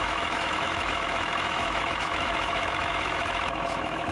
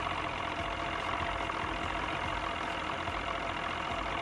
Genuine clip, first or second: second